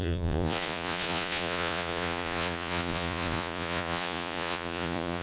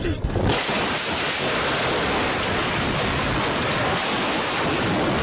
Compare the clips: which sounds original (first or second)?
second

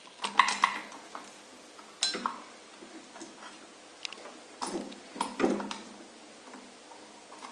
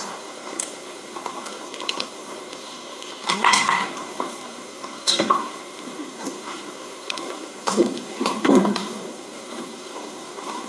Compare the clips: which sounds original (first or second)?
first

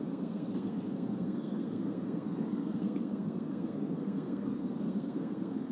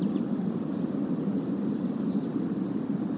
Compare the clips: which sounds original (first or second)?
second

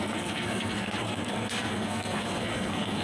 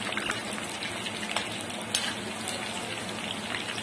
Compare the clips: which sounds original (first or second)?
second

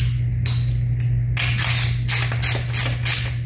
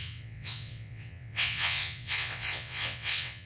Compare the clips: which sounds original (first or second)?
first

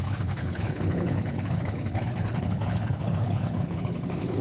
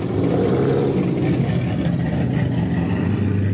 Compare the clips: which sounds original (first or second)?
second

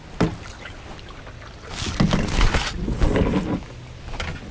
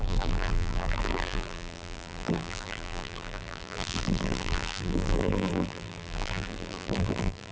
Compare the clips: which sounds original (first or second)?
first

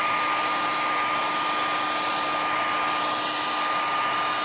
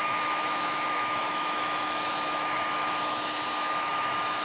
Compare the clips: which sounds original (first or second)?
first